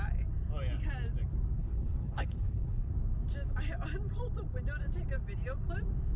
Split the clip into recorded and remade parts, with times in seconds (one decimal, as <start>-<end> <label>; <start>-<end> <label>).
0.0-1.6 recorded; 1.6-2.9 remade; 2.9-6.2 recorded